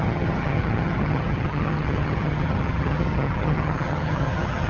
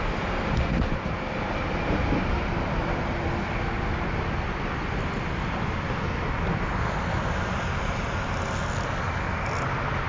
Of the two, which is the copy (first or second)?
first